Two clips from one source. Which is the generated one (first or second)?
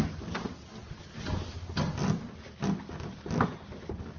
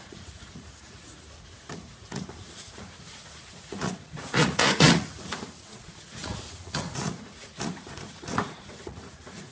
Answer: second